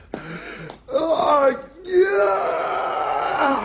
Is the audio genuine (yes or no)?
no